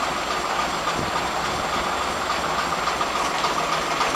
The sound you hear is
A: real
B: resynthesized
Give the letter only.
A